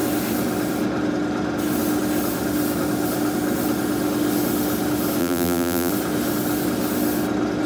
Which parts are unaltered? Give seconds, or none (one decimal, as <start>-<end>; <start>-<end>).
0.0-5.2; 5.9-7.7